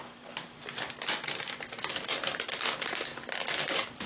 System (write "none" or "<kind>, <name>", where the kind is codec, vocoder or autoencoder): none